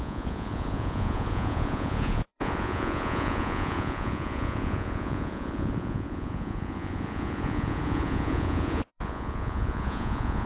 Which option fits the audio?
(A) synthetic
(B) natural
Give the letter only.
A